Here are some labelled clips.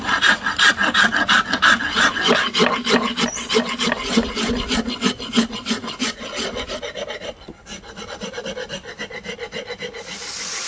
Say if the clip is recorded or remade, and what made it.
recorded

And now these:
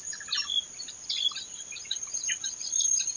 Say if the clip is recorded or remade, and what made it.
remade, vocoder, BigVGAN v2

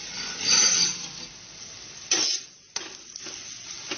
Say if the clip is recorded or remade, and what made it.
recorded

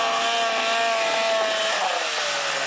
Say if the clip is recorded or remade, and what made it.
recorded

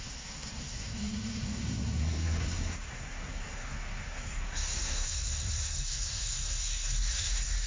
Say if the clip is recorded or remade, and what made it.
remade, codec, SNAC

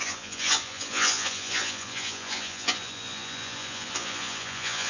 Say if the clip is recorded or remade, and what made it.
remade, vocoder, Vocos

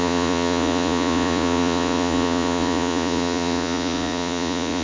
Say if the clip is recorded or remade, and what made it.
remade, vocoder, Vocos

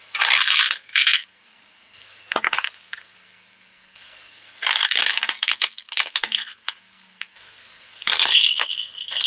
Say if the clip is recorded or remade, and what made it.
remade, codec, SNAC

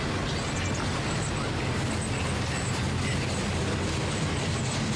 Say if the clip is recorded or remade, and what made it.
recorded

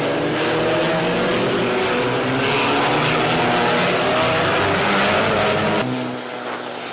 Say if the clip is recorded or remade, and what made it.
recorded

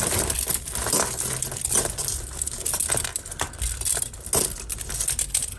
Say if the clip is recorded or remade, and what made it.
recorded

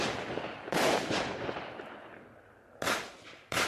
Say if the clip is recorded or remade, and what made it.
recorded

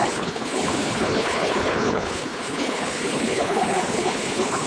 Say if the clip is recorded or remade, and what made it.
remade, codec, HILCodec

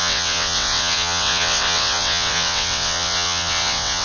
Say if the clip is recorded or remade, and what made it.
remade, vocoder, WaveNeXt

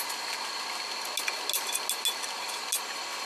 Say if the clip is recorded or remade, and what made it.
recorded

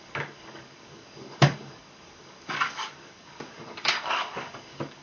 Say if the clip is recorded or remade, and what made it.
remade, codec, DAC